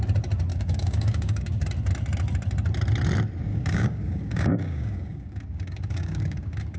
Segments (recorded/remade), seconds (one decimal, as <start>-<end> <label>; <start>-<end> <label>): 0.0-0.5 recorded; 0.5-1.6 remade; 1.6-3.5 recorded; 3.5-6.8 remade